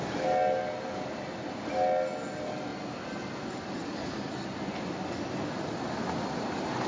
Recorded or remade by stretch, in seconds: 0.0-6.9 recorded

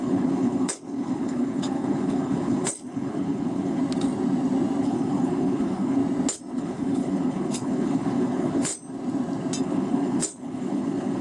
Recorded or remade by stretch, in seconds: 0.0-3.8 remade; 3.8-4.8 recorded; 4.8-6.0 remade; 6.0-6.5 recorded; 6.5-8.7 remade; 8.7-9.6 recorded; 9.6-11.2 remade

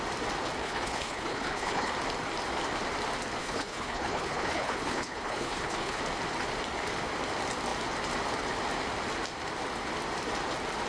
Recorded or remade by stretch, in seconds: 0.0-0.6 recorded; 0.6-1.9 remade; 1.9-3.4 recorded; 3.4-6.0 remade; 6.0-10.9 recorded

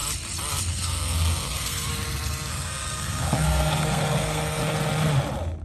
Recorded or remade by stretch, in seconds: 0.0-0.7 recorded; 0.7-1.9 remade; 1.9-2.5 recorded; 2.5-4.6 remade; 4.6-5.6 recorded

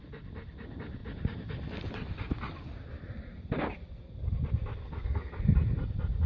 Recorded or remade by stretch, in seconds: 0.0-4.8 recorded; 4.8-5.3 remade; 5.3-6.3 recorded